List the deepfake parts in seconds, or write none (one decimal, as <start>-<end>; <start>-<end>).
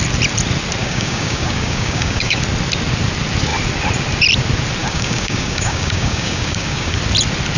0.8-2.4; 4.8-7.0